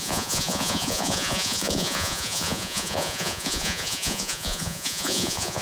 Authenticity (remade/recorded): remade